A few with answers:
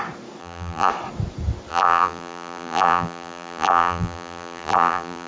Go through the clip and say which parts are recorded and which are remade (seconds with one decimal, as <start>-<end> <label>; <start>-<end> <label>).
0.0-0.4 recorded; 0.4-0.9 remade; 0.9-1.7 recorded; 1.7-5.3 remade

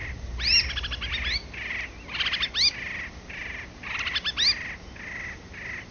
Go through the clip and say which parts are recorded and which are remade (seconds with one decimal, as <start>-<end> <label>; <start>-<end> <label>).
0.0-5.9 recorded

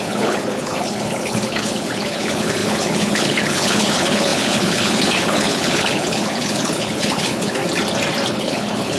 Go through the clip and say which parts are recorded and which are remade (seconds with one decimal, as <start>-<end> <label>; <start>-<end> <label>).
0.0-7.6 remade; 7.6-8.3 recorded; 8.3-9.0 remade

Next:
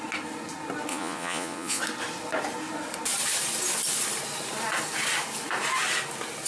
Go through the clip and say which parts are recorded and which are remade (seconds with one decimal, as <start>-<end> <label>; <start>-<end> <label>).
0.0-0.9 recorded; 0.9-1.8 remade; 1.8-6.5 recorded

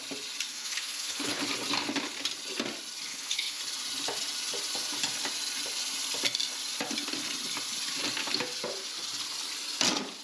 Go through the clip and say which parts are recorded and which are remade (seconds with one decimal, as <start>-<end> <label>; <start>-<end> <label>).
0.0-0.5 recorded; 0.5-1.4 remade; 1.4-3.1 recorded; 3.1-3.6 remade; 3.6-10.2 recorded

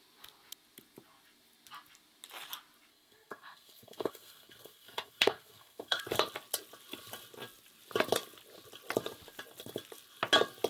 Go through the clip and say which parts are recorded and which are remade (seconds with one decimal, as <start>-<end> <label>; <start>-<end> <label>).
0.0-2.9 recorded; 2.9-6.0 remade; 6.0-10.7 recorded

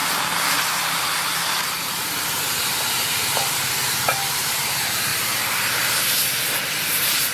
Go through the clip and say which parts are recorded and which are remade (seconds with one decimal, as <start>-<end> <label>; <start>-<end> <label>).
0.0-0.8 recorded; 0.8-5.1 remade; 5.1-6.6 recorded; 6.6-7.3 remade